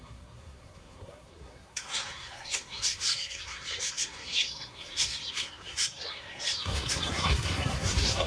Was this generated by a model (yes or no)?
yes